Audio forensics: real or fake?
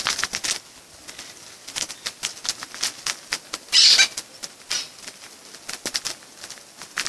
real